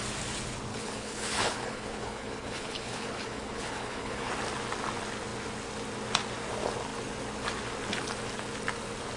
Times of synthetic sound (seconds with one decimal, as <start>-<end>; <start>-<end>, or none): 0.7-4.3